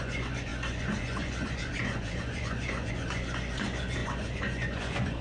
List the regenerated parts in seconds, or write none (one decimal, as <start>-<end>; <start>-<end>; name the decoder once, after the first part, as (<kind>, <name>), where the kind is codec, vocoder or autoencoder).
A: 0.0-5.2 (vocoder, Vocos)